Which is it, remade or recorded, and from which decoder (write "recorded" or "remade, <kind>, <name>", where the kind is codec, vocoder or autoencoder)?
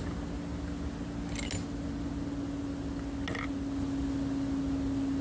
recorded